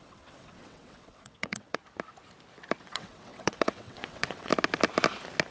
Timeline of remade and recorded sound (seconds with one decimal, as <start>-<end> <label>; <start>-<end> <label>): 0.0-1.8 remade; 1.8-2.9 recorded; 2.9-4.5 remade; 4.5-5.5 recorded